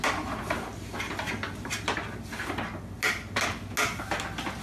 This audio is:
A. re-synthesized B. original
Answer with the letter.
B